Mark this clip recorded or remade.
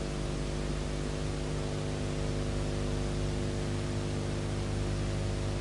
recorded